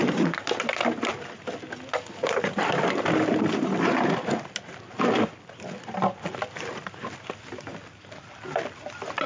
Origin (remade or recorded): recorded